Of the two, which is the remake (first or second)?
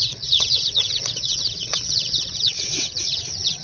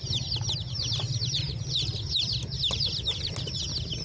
first